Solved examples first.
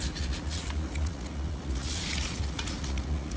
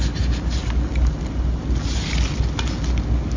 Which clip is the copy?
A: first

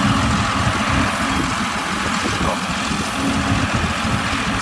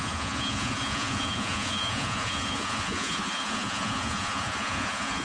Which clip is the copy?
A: second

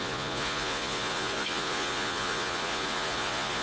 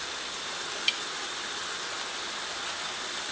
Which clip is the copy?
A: first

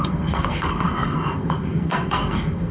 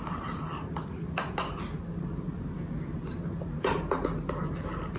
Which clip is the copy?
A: first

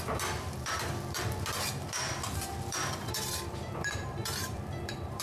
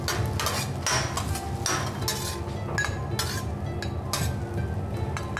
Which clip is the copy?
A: first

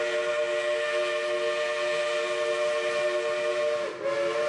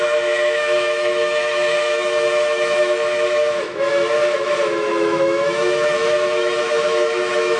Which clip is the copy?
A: second